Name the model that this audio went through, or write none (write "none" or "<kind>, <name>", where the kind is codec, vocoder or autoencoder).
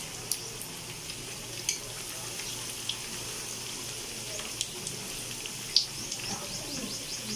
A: none